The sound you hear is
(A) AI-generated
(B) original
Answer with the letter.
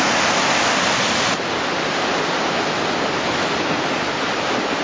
B